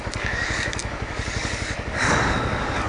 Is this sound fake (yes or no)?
yes